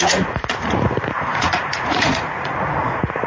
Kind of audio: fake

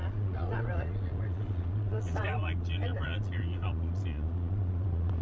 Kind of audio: fake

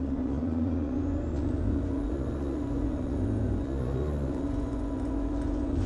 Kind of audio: fake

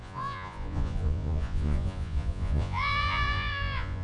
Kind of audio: fake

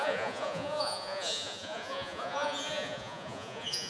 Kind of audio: fake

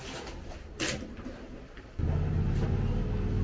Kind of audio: real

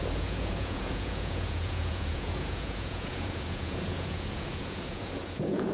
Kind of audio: fake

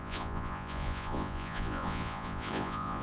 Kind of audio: fake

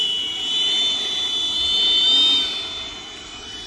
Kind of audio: real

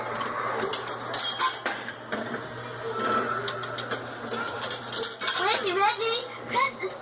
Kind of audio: real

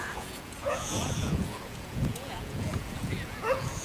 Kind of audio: fake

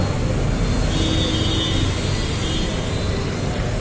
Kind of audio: real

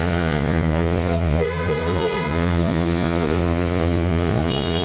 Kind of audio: fake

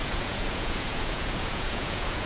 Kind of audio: fake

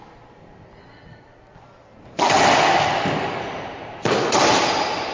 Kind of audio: real